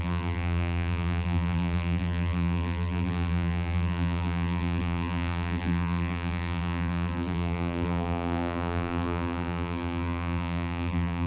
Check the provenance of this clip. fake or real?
fake